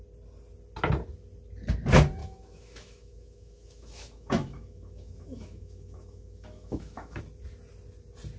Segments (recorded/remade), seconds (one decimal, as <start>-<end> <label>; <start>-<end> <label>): 0.0-2.2 recorded; 2.2-7.2 remade; 7.2-8.4 recorded